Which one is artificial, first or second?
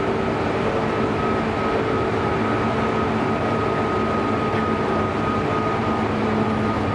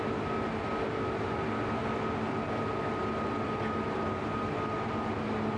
first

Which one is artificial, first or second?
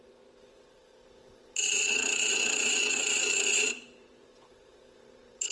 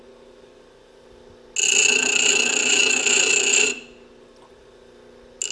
first